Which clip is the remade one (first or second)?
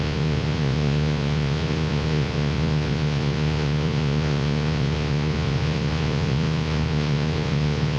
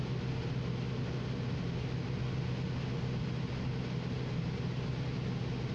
first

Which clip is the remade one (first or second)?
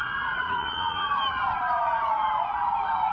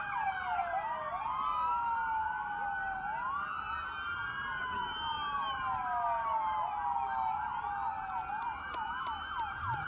first